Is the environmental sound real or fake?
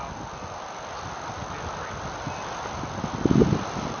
real